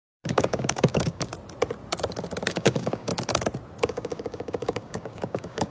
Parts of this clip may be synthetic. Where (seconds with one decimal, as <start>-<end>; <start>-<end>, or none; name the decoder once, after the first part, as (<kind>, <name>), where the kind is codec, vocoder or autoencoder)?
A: 0.0-1.3 (codec, DAC); 2.5-3.1; 3.8-5.7